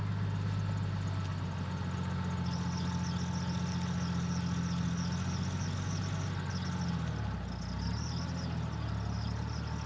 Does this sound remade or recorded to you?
recorded